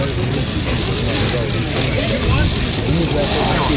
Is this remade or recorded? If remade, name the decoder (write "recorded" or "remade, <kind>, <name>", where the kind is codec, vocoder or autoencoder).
recorded